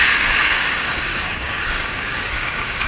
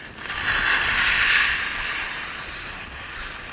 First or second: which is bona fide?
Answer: second